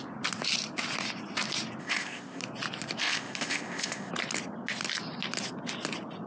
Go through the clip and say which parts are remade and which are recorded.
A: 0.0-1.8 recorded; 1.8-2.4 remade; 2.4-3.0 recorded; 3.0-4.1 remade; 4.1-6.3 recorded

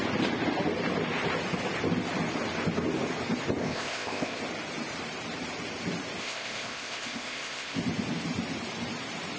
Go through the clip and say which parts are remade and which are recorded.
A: 0.0-3.6 recorded; 3.6-4.4 remade; 4.4-6.2 recorded; 6.2-7.8 remade; 7.8-9.4 recorded

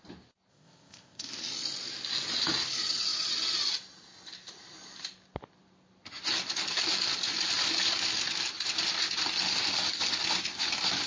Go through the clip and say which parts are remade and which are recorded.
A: 0.0-0.5 recorded; 0.5-1.4 remade; 1.4-11.1 recorded

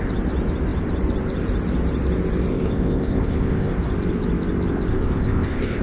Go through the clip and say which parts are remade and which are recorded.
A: 0.0-2.5 recorded; 2.5-3.7 remade; 3.7-4.9 recorded; 4.9-5.8 remade

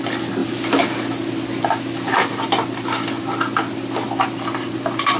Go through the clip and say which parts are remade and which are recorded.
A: 0.0-5.2 recorded